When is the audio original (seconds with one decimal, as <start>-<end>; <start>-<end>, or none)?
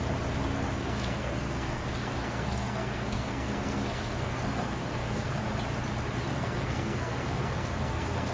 0.0-0.7; 5.4-6.3